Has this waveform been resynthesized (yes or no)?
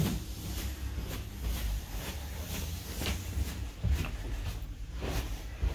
yes